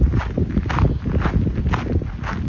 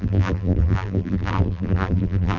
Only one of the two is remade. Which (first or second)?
second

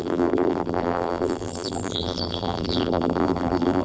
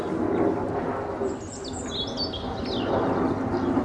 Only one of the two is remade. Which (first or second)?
first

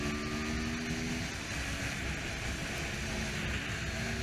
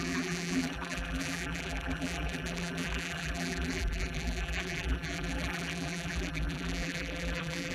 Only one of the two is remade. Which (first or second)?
second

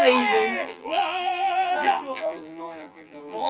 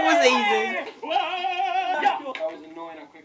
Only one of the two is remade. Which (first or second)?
first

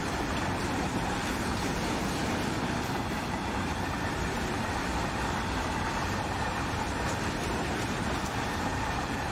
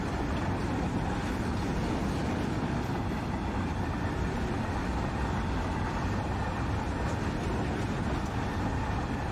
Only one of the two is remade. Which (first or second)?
first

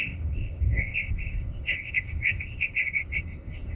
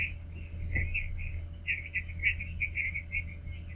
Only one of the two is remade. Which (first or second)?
first